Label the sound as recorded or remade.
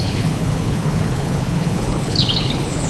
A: remade